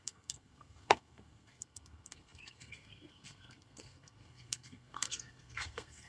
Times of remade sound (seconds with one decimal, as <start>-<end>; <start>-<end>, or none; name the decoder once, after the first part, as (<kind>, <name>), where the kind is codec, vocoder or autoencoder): 0.0-6.1 (codec, SNAC)